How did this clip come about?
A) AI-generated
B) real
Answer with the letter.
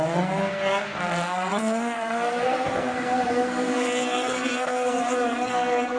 A